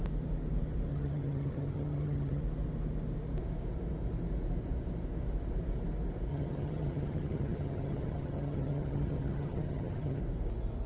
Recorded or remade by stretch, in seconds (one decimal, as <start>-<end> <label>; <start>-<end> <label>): 0.0-0.9 recorded; 0.9-2.4 remade; 2.4-6.3 recorded; 6.3-10.2 remade; 10.2-10.9 recorded